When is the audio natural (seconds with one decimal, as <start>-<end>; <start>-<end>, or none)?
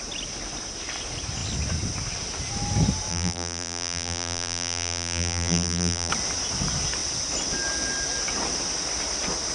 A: 0.0-3.1; 6.1-9.5